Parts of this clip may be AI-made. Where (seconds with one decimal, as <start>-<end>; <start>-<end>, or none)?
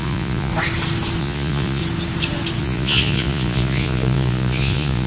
0.0-0.5; 1.2-1.8; 2.6-5.1